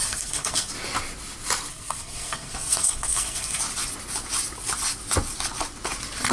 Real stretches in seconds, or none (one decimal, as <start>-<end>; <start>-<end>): 0.7-1.7; 3.6-6.3